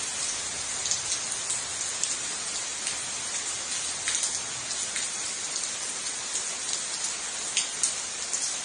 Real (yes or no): yes